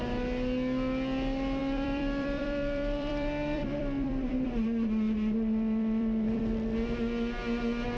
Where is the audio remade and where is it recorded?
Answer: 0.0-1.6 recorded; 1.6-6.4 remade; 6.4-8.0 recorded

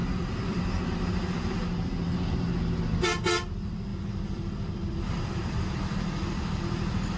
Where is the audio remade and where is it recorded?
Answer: 0.0-0.6 remade; 0.6-3.9 recorded; 3.9-6.6 remade; 6.6-7.2 recorded

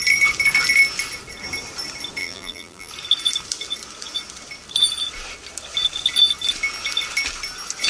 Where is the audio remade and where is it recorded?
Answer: 0.0-2.2 recorded; 2.2-2.9 remade; 2.9-7.9 recorded

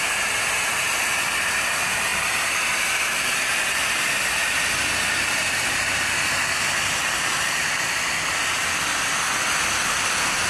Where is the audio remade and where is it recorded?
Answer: 0.0-10.5 recorded